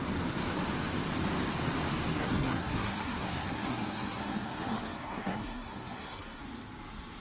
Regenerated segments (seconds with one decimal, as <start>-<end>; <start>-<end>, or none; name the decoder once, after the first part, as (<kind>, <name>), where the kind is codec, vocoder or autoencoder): 2.1-6.4 (codec, SNAC)